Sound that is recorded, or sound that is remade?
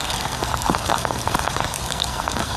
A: remade